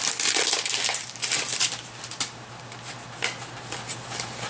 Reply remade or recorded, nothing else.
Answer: recorded